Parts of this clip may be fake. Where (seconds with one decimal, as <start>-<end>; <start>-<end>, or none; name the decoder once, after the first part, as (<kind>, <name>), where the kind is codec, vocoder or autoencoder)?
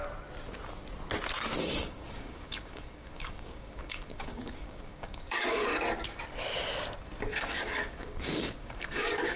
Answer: 1.6-5.6 (codec, DAC); 7.3-9.4